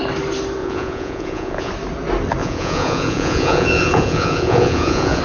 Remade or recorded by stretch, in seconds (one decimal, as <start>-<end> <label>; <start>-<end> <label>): 0.0-0.6 recorded; 0.6-1.7 remade; 1.7-2.4 recorded; 2.4-5.2 remade